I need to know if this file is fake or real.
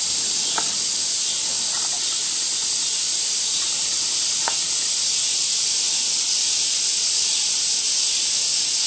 real